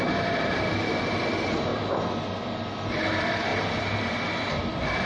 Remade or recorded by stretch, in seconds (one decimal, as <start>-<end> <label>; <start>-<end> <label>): 0.0-3.5 remade; 3.5-4.1 recorded; 4.1-5.1 remade